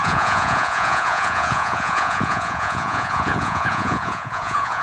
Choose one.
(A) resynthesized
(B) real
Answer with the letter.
A